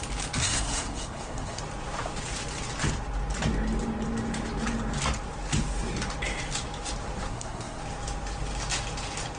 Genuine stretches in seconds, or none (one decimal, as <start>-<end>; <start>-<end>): 0.0-0.4; 1.6-7.3; 7.8-9.4